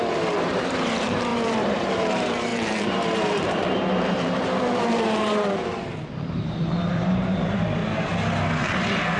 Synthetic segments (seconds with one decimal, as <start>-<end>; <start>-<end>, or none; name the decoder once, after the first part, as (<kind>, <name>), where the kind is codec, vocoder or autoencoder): 0.0-7.8 (vocoder, BigVGAN v2)